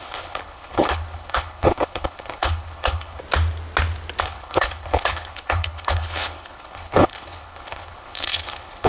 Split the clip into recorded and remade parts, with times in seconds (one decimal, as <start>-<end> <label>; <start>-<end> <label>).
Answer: 0.0-3.2 remade; 3.2-4.2 recorded; 4.2-8.9 remade